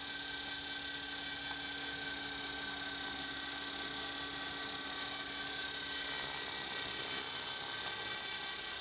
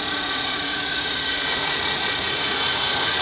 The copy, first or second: second